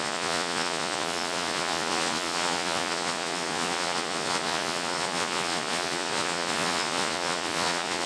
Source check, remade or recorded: remade